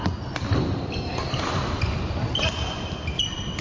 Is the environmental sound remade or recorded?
recorded